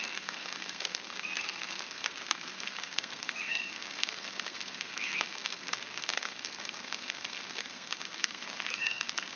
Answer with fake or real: fake